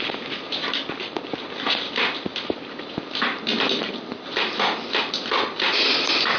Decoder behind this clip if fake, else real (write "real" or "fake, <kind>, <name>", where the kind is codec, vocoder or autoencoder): real